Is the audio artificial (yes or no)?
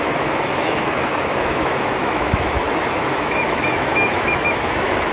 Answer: yes